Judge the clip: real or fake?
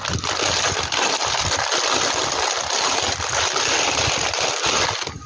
real